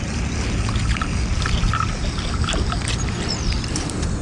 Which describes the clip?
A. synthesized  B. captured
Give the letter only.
B